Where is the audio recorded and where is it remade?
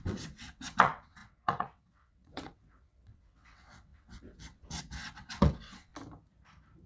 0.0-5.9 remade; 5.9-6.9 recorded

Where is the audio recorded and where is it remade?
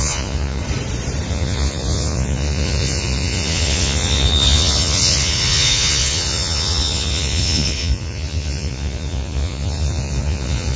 0.0-0.6 remade; 0.6-1.3 recorded; 1.3-10.8 remade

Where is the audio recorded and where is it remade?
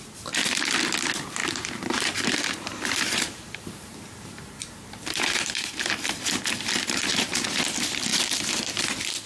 0.0-1.4 recorded; 1.4-5.8 remade; 5.8-7.1 recorded; 7.1-7.6 remade; 7.6-8.1 recorded; 8.1-8.8 remade; 8.8-9.3 recorded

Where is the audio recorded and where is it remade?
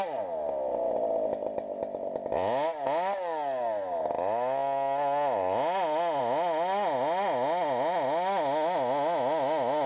0.0-9.9 recorded